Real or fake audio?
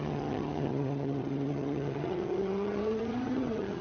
fake